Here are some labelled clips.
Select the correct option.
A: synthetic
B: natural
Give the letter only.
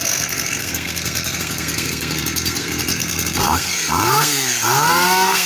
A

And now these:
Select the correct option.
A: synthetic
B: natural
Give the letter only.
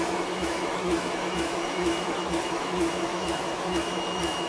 A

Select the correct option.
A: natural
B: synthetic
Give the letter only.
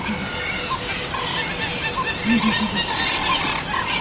A